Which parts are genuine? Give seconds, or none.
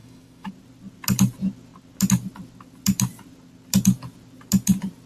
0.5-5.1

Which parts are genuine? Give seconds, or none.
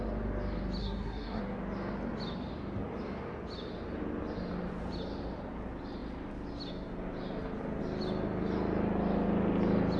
0.0-0.8; 1.4-10.0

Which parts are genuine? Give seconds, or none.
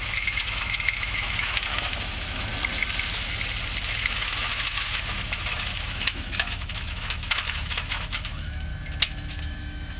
2.5-4.0; 8.7-9.3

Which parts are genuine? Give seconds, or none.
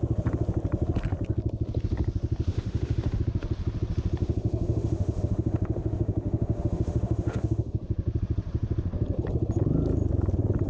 0.0-2.5; 3.2-4.2; 7.8-10.7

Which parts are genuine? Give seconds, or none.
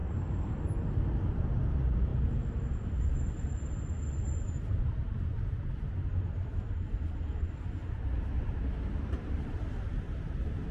0.0-1.7; 2.1-3.0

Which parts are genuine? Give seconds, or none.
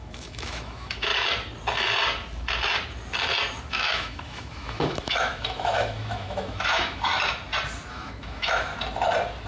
1.1-3.7; 7.1-7.9; 8.7-9.5